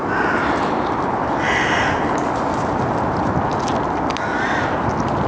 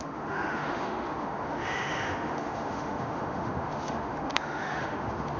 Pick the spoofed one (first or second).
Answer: second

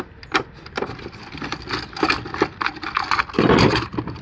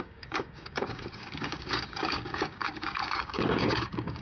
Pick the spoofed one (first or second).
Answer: second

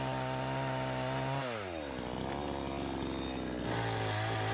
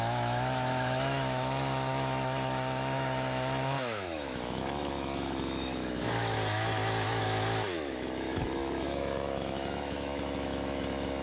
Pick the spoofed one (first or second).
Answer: second